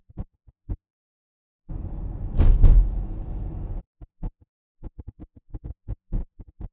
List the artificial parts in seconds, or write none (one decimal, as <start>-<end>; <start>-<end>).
0.0-1.7; 3.8-6.7